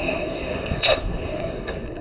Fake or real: fake